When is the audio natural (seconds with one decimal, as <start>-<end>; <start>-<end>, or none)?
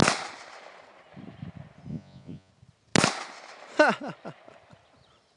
0.0-1.9; 2.5-5.4